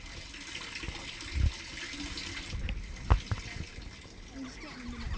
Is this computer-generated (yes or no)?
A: no